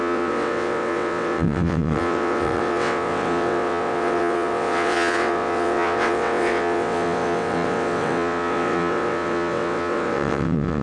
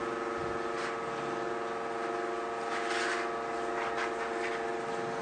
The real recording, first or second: second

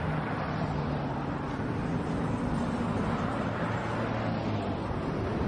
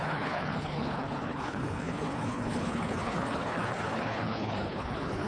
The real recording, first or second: first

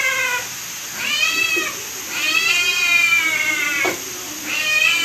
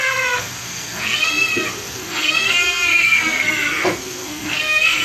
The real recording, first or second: first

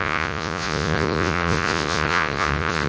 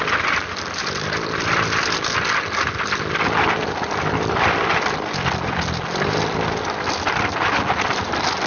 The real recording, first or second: second